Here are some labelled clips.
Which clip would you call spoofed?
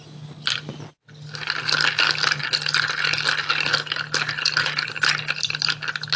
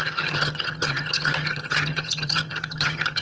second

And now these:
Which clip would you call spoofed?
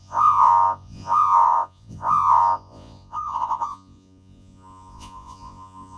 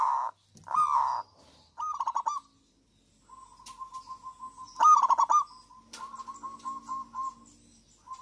first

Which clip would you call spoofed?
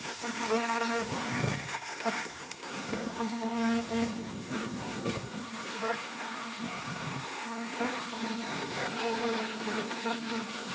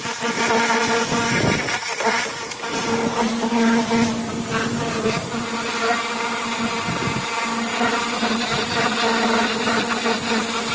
first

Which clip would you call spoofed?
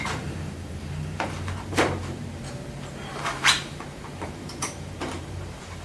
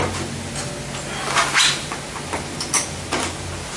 first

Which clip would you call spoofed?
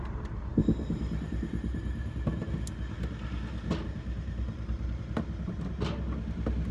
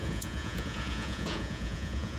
second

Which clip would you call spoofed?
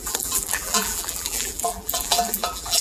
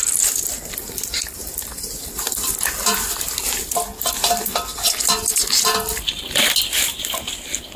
first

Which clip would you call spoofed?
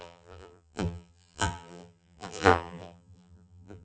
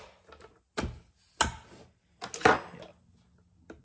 first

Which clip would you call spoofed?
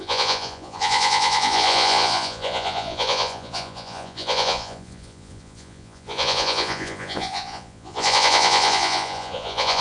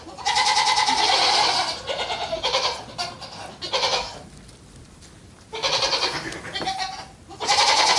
first